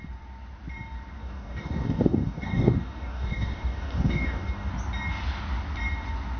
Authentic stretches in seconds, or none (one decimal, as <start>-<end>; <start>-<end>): 0.0-1.2; 4.7-6.4